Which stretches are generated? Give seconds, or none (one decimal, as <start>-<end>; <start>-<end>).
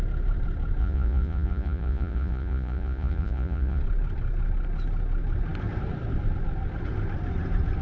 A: 0.8-3.8